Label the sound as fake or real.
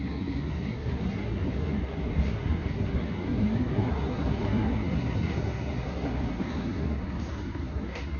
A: fake